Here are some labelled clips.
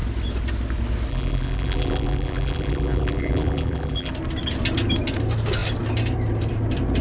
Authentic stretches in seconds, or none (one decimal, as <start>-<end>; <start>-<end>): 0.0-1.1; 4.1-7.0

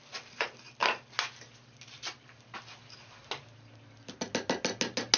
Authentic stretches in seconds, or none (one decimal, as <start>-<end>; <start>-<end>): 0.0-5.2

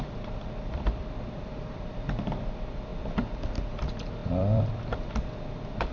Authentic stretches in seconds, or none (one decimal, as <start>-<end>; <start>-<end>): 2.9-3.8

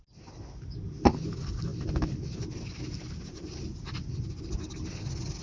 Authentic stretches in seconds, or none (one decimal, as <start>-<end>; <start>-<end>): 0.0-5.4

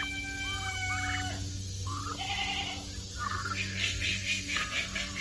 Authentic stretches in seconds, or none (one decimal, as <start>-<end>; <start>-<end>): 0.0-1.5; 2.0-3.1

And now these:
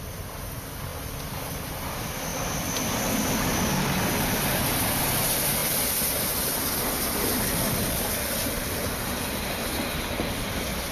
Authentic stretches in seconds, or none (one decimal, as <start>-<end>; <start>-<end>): 0.0-5.6; 6.8-8.4; 9.0-10.9

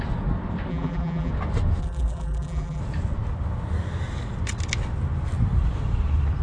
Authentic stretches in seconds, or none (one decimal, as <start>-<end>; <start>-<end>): 0.0-0.7; 1.3-1.8; 2.8-6.4